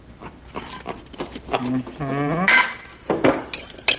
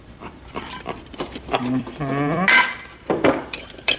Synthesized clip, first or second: second